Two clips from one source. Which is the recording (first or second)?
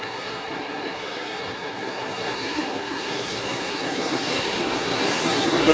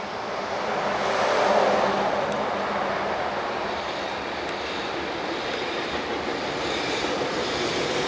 second